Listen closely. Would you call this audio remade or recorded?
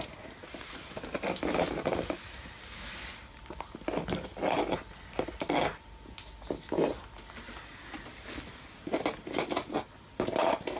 recorded